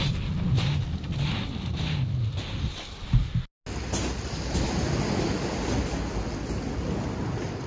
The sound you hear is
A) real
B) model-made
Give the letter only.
A